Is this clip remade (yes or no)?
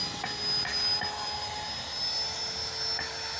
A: no